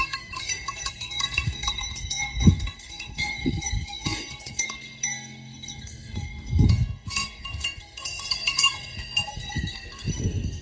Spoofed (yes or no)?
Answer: yes